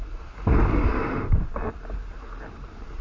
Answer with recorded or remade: recorded